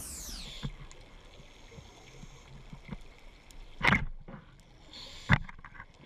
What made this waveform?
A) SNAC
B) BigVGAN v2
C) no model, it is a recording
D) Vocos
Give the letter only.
C